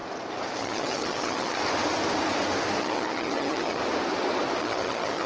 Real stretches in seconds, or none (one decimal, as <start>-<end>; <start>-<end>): 0.0-0.6; 1.6-2.8; 3.8-4.6